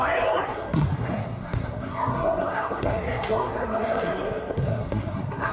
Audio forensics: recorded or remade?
remade